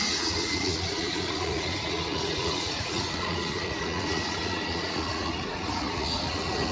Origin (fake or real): fake